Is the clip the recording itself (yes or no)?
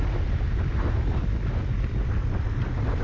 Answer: yes